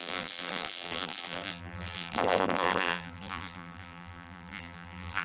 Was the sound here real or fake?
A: fake